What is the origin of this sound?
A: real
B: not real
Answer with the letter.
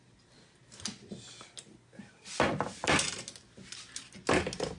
A